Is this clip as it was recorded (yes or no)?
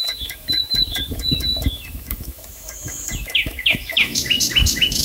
no